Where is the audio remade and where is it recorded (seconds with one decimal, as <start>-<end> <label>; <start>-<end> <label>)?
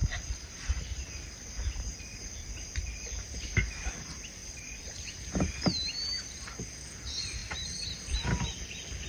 0.0-1.0 remade; 1.0-4.4 recorded; 4.4-5.1 remade; 5.1-9.1 recorded